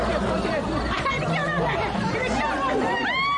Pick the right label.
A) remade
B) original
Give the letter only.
A